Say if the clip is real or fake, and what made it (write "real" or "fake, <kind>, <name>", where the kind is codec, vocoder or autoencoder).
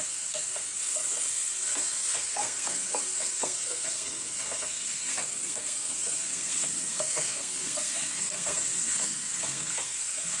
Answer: fake, codec, SNAC